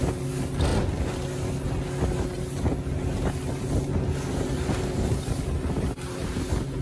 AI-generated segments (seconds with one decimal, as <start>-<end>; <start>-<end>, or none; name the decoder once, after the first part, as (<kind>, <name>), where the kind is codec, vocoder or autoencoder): none